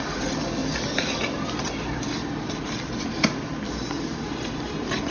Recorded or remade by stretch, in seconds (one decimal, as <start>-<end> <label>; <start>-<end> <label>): 0.0-5.1 recorded